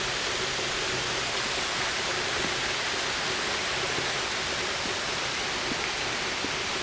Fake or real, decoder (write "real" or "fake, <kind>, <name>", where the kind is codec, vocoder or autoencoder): real